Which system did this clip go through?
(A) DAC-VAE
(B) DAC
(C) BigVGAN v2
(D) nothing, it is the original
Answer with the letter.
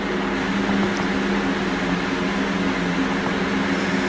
D